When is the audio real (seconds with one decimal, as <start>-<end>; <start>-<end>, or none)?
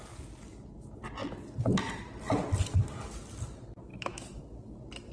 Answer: 0.0-3.9; 4.4-5.1